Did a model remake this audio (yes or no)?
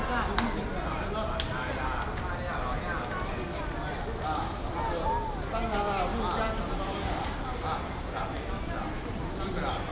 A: no